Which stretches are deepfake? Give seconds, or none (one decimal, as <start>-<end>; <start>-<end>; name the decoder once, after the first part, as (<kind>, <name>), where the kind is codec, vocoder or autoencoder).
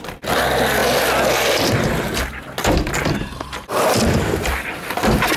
none